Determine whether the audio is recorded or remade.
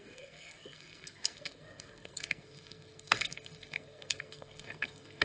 remade